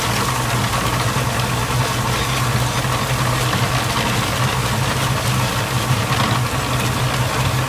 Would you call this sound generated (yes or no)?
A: no